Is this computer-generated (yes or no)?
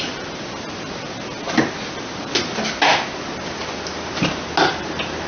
no